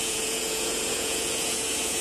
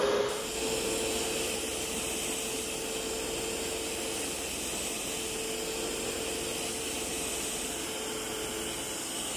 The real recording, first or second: second